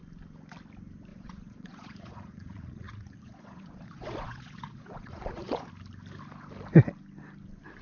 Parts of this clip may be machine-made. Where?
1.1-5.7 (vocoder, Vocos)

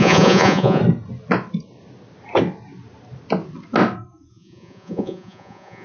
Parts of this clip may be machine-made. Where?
0.0-0.8 (vocoder, Vocos); 4.3-5.8

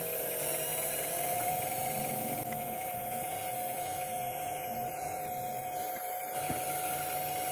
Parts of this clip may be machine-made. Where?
0.7-5.2 (vocoder, Vocos)

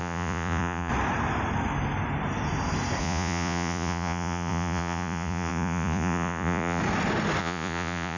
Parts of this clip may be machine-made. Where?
0.0-0.9 (vocoder, Vocos); 3.0-6.8; 7.4-8.2